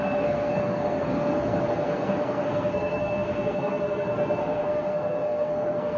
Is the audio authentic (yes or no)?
no